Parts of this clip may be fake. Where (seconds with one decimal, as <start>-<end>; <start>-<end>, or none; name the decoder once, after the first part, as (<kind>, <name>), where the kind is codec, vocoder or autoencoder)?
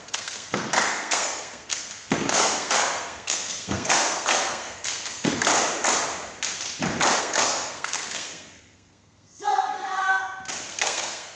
0.0-5.5 (codec, SNAC); 7.2-10.2; 10.7-11.4